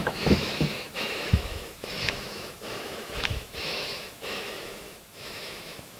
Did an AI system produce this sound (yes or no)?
yes